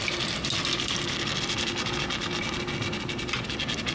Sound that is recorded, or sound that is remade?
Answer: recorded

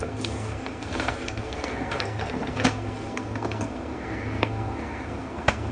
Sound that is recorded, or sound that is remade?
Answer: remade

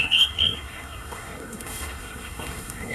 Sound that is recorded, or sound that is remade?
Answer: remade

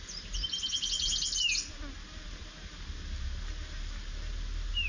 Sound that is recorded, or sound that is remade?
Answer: recorded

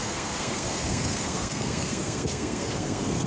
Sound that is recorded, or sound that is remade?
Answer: remade